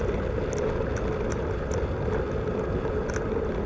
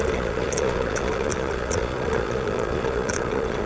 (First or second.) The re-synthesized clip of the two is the second